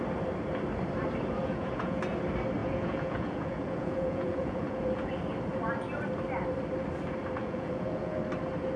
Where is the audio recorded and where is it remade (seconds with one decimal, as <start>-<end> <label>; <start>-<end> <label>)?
0.0-1.4 recorded; 1.4-2.0 remade; 2.0-2.6 recorded; 2.6-5.1 remade; 5.1-7.4 recorded; 7.4-8.2 remade; 8.2-8.8 recorded